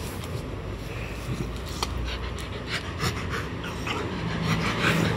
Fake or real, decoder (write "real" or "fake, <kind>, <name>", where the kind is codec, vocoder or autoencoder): real